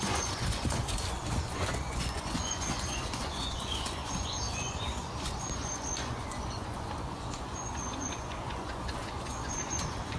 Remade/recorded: remade